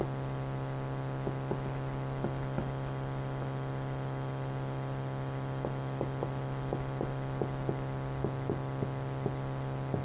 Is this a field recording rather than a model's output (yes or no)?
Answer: yes